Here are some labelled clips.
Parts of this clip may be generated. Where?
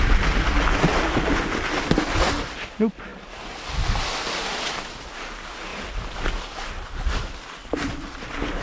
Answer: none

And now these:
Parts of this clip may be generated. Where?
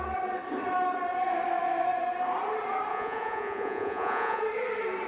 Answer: 2.9-4.4 (vocoder, Vocos)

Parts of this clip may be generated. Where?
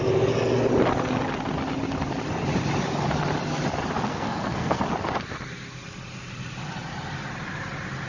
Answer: 4.1-4.8 (codec, SNAC)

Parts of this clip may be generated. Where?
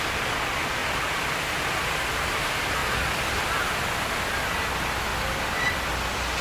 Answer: 2.8-3.6 (vocoder, BigVGAN v2); 5.1-5.7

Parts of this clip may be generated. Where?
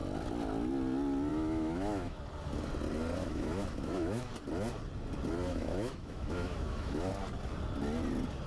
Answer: 1.3-2.2 (autoencoder, DAC-VAE); 3.2-4.3; 5.5-7.1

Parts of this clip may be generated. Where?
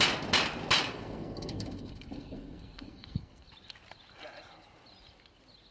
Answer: 0.9-3.5 (codec, SNAC)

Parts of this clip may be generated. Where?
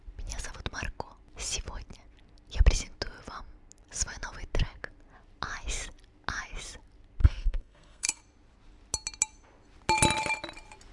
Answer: 7.2-8.2 (codec, SNAC)